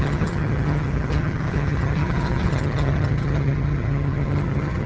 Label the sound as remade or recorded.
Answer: remade